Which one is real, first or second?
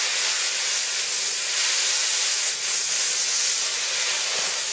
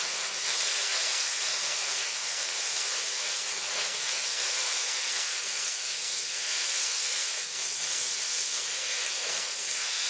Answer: first